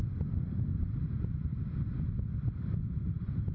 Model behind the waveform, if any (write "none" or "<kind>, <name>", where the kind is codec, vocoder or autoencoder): none